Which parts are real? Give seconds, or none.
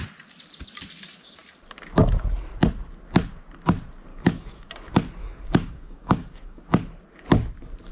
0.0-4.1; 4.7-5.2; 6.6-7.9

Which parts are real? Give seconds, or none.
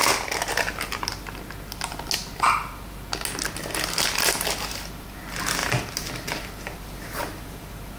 0.0-8.0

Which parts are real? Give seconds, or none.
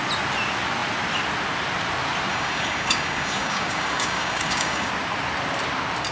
0.0-2.3; 4.9-6.1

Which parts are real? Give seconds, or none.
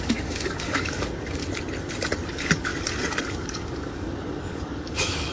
1.4-2.3; 2.7-3.3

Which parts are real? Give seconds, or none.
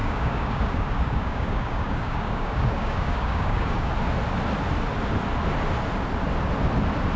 3.9-7.2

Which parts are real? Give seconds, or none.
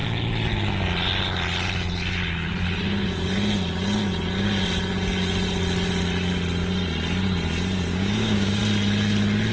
0.0-7.9; 8.6-9.5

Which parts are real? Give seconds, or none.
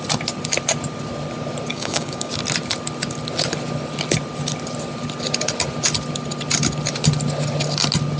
0.0-1.7; 2.3-8.2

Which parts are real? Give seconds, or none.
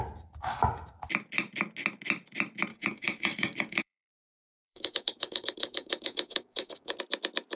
0.0-2.7; 7.0-7.6